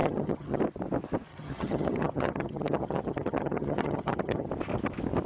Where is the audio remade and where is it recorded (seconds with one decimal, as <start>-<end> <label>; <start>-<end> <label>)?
0.0-0.6 remade; 0.6-1.3 recorded; 1.3-4.5 remade; 4.5-5.3 recorded